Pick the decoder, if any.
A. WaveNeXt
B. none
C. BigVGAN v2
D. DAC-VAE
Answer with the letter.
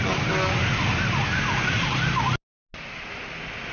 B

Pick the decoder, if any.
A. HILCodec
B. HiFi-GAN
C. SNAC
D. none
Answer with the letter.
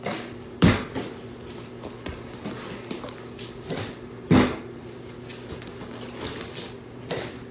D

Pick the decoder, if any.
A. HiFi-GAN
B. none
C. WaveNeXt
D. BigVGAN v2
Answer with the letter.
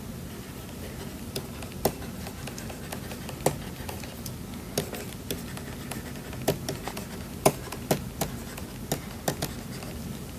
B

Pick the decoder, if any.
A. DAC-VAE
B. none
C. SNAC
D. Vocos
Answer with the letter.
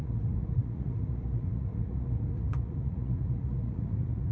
D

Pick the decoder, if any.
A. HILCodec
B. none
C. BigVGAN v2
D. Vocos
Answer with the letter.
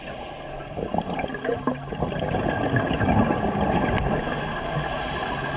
B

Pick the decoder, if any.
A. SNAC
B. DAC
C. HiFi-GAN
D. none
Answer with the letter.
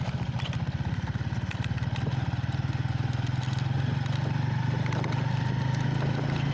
D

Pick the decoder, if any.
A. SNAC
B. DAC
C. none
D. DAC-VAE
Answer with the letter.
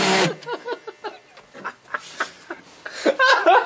C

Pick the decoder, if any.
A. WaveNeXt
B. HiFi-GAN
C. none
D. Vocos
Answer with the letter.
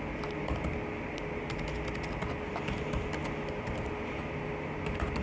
C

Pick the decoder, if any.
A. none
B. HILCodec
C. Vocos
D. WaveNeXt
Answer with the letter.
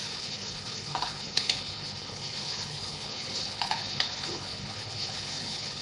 B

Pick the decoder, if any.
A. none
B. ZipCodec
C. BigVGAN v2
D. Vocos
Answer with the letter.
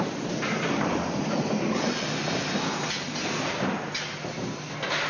A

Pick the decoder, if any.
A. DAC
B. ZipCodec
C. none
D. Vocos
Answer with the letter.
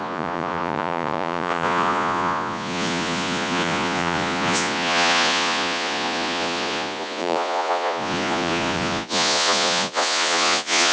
D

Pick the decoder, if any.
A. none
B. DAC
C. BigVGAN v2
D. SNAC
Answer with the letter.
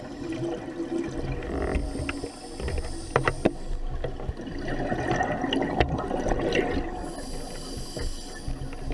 A